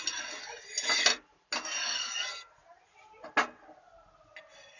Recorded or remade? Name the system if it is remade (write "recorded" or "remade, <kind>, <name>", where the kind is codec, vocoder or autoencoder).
recorded